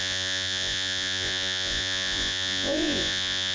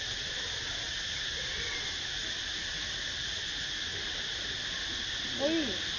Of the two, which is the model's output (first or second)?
first